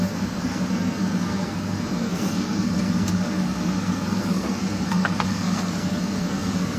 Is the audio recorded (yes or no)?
no